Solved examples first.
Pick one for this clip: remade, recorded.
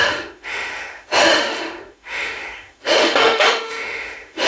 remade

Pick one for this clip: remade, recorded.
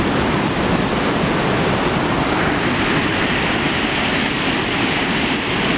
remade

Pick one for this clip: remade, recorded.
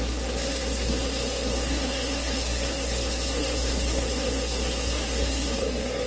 remade